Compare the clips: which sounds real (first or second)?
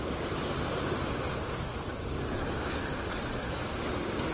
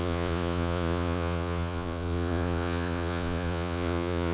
first